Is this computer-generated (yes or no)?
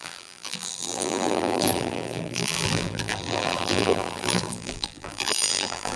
yes